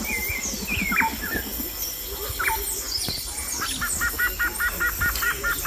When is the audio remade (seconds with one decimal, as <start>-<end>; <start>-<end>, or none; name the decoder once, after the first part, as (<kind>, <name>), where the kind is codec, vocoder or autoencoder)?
none